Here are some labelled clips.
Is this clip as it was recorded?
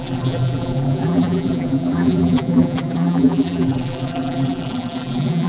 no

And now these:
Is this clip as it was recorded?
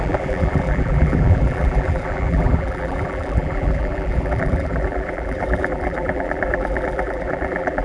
no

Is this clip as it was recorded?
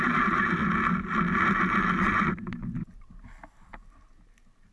yes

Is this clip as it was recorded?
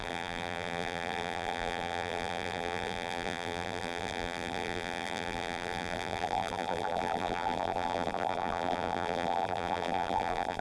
no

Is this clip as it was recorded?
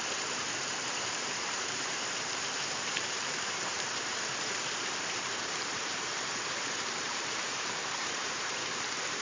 no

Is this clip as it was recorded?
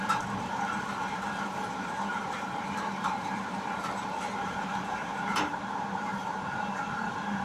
no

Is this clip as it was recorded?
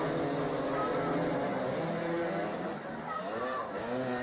yes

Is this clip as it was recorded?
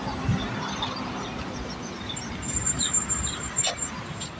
yes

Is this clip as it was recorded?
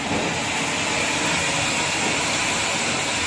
yes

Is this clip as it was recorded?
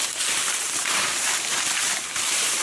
no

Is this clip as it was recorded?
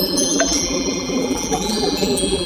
no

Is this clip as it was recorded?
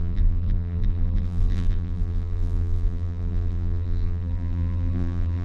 no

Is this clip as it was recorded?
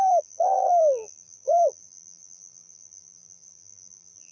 no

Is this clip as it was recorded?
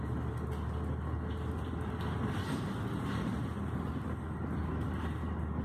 yes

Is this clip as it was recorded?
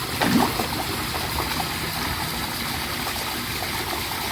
yes